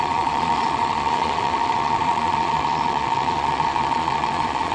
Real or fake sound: fake